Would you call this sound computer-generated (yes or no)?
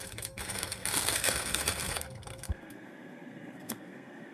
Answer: yes